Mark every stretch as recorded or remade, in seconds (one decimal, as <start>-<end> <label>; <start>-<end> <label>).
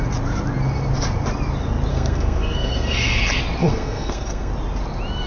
0.0-1.9 recorded; 1.9-3.2 remade; 3.2-3.6 recorded; 3.6-4.5 remade; 4.5-5.3 recorded